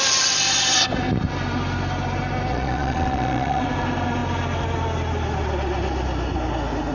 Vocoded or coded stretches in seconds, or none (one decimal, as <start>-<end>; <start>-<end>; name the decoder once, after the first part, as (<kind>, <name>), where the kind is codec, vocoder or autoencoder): 2.5-3.6 (vocoder, Vocos)